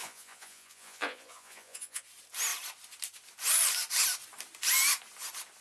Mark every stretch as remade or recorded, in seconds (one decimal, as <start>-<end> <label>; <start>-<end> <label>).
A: 0.0-2.0 remade; 2.0-5.6 recorded